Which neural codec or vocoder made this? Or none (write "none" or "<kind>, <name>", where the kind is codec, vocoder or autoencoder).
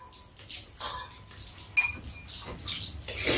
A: none